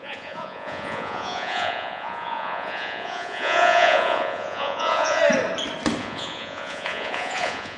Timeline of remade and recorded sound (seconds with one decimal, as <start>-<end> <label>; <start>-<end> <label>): 0.0-5.2 remade; 5.2-6.0 recorded; 6.0-7.8 remade